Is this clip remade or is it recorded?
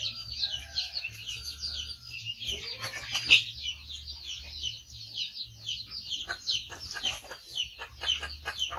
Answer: recorded